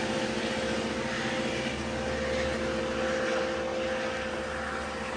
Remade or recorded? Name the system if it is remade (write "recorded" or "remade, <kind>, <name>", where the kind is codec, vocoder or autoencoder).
recorded